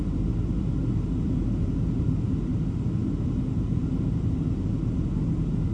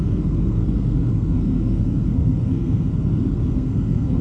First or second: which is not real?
second